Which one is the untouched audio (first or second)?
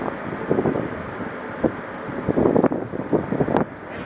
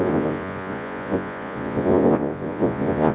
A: first